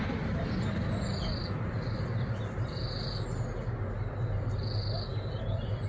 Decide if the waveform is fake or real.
real